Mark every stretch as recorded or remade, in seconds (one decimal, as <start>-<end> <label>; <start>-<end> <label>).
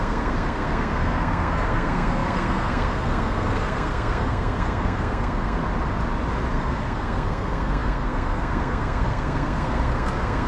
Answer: 0.0-5.6 remade; 5.6-6.5 recorded; 6.5-10.5 remade